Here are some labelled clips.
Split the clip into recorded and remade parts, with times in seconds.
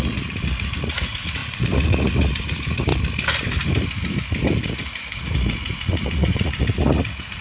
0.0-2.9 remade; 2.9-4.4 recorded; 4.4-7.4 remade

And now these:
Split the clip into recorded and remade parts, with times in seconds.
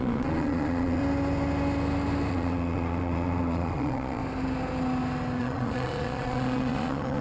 0.0-1.0 remade; 1.0-2.3 recorded; 2.3-4.2 remade; 4.2-5.4 recorded; 5.4-7.2 remade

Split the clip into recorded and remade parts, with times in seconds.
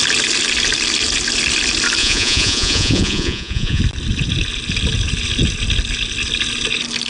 0.0-2.0 recorded; 2.0-3.8 remade; 3.8-7.1 recorded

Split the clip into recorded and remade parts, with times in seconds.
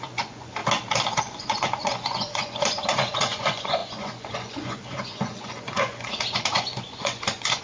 0.0-0.6 remade; 0.6-1.2 recorded; 1.2-7.6 remade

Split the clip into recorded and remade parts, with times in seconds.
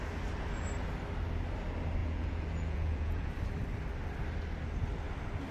0.0-2.0 recorded; 2.0-3.3 remade; 3.3-5.5 recorded